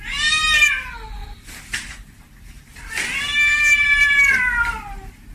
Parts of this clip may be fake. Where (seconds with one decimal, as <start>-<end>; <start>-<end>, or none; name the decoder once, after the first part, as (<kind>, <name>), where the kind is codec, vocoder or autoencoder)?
1.2-4.4 (vocoder, BigVGAN v2)

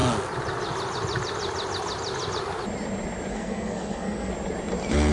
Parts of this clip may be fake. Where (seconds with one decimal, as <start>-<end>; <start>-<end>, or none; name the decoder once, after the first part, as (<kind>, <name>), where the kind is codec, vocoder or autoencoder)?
3.3-4.3 (codec, SNAC)

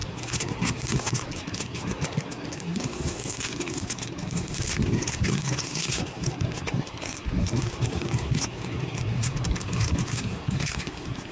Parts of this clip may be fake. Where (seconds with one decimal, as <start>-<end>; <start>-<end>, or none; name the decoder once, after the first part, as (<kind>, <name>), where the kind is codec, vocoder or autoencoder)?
0.0-11.3 (codec, SNAC)

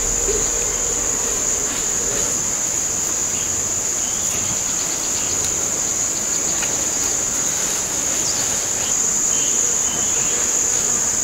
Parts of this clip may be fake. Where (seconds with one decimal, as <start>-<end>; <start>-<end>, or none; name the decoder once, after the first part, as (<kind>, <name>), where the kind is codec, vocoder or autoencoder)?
none